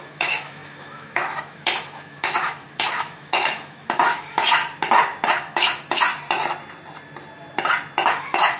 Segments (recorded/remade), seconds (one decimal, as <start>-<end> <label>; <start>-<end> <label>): 0.0-4.6 remade; 4.6-5.3 recorded; 5.3-6.1 remade; 6.1-8.1 recorded; 8.1-8.6 remade

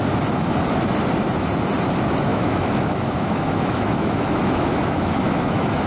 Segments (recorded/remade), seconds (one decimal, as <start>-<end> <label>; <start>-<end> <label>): 0.0-2.3 recorded; 2.3-5.9 remade

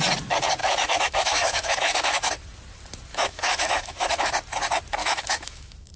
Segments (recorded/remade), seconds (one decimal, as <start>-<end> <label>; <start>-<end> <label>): 0.0-0.6 recorded; 0.6-2.3 remade; 2.3-3.1 recorded; 3.1-4.3 remade; 4.3-5.0 recorded; 5.0-6.0 remade

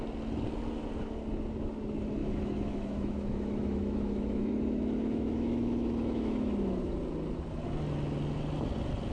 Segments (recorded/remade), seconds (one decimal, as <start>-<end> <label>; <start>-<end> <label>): 0.0-2.2 recorded; 2.2-6.9 remade; 6.9-9.1 recorded

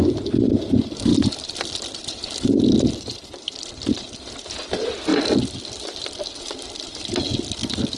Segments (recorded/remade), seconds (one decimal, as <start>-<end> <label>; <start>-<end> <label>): 0.0-8.0 recorded

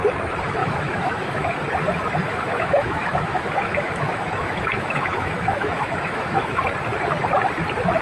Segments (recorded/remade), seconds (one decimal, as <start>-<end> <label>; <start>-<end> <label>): 0.0-0.6 recorded; 0.6-1.6 remade; 1.6-2.2 recorded; 2.2-6.6 remade; 6.6-8.0 recorded